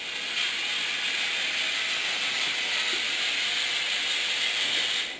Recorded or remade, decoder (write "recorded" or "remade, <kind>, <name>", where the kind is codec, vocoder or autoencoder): recorded